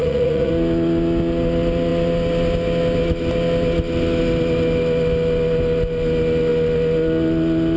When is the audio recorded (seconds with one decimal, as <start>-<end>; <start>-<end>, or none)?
0.5-7.8